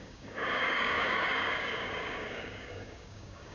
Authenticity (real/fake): fake